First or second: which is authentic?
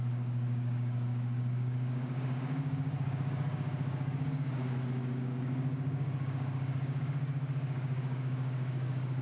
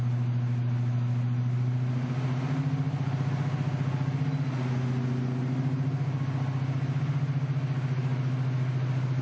second